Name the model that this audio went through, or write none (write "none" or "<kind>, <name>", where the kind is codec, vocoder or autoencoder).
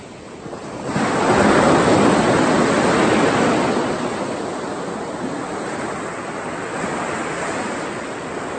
none